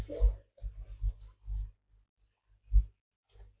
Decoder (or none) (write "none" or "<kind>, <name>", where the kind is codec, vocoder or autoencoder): none